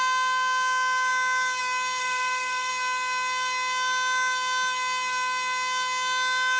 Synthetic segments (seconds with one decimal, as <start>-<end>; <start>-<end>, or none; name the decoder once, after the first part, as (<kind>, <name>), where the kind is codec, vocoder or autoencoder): 2.0-2.7 (codec, SNAC)